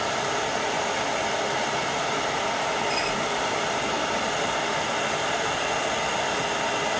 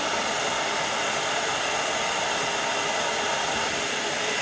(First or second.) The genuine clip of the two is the first